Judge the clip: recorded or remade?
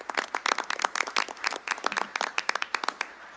recorded